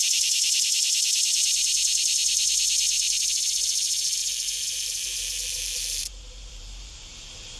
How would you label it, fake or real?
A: fake